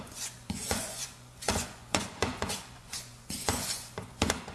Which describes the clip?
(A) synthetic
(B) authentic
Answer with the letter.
A